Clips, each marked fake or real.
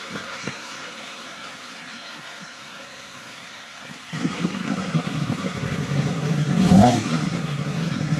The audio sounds fake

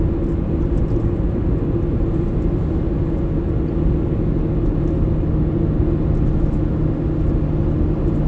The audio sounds real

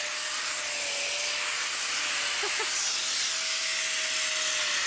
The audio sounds real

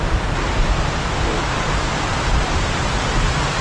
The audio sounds real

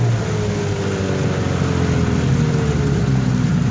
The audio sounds real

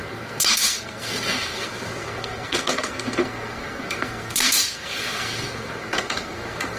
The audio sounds fake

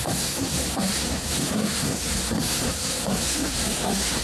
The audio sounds fake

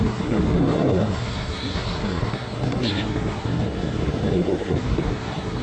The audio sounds fake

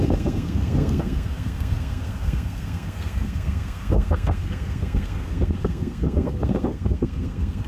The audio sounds fake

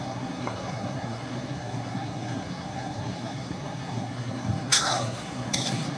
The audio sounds fake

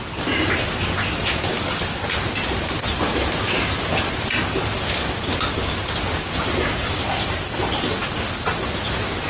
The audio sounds real